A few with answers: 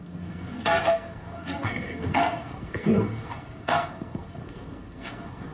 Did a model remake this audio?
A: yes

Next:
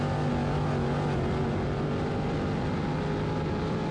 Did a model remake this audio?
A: no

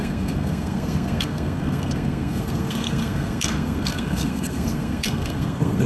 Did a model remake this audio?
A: yes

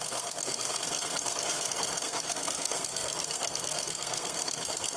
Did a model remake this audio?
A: yes